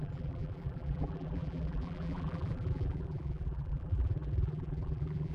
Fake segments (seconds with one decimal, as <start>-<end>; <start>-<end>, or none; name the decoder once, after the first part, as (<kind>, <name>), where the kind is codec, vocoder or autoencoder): 0.0-5.3 (vocoder, BigVGAN v2)